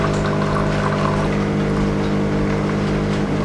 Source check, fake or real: real